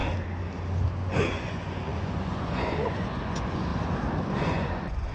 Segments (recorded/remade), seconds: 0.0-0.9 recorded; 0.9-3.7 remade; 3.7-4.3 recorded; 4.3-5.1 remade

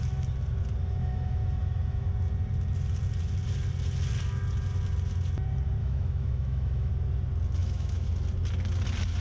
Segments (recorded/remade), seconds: 0.0-1.0 recorded; 1.0-2.1 remade; 2.1-5.8 recorded; 5.8-6.9 remade; 6.9-7.6 recorded; 7.6-8.1 remade; 8.1-9.2 recorded

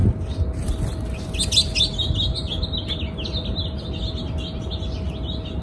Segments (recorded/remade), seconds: 0.0-5.6 recorded